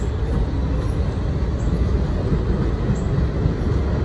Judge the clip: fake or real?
real